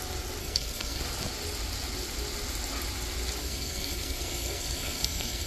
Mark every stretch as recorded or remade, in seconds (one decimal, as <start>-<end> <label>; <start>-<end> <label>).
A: 0.0-0.4 recorded; 0.4-1.0 remade; 1.0-3.4 recorded; 3.4-5.5 remade